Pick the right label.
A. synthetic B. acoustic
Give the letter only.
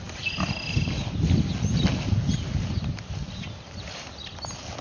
B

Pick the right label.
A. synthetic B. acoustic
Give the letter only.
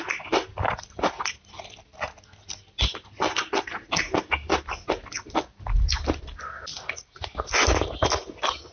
B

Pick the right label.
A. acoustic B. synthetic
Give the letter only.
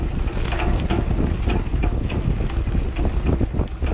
A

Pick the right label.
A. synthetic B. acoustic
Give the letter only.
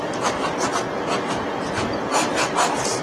A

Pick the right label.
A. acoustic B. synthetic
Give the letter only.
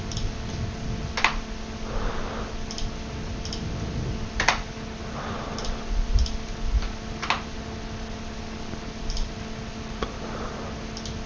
A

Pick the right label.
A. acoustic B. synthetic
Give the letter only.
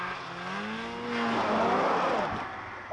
A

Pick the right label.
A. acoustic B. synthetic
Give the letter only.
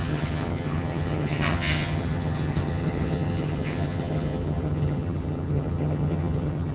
B